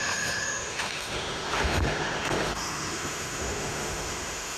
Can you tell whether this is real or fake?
fake